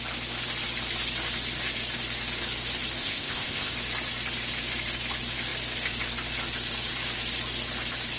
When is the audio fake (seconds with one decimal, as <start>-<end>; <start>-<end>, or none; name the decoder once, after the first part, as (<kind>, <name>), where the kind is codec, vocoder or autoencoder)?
3.0-3.7 (codec, ZipCodec)